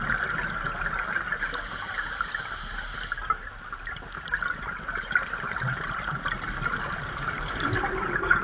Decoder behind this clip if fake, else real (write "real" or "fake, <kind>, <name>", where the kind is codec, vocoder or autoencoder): real